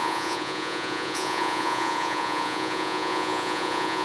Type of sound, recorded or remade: remade